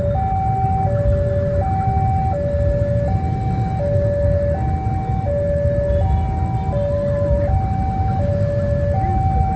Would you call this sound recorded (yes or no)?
yes